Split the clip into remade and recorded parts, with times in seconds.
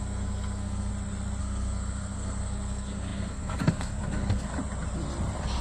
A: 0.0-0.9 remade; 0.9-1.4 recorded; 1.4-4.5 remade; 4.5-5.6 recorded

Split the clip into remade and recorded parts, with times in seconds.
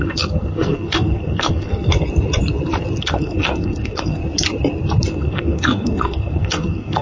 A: 0.0-1.9 remade; 1.9-3.0 recorded; 3.0-4.2 remade; 4.2-5.1 recorded; 5.1-7.0 remade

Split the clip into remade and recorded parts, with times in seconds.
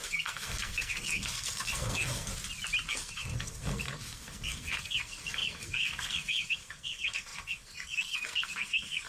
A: 0.0-2.3 remade; 2.3-2.9 recorded; 2.9-9.1 remade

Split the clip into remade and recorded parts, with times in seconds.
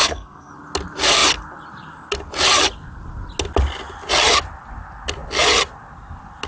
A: 0.0-0.5 remade; 0.5-6.5 recorded